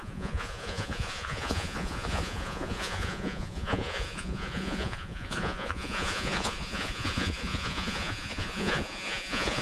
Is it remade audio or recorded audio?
remade